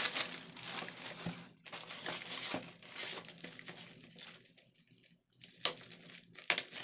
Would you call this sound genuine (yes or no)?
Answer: yes